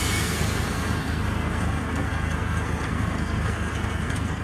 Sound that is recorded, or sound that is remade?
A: remade